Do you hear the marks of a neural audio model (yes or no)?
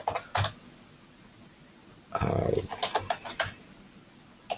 no